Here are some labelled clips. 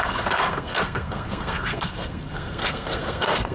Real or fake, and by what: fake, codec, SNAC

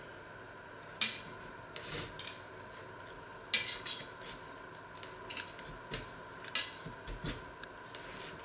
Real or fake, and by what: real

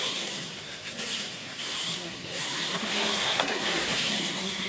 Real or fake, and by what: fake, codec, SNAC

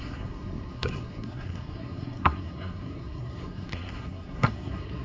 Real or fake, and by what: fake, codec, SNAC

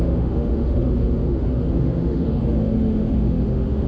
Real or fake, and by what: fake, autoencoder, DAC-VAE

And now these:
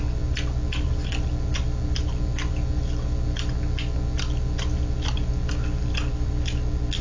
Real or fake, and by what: real